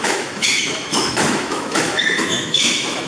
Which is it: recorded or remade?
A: remade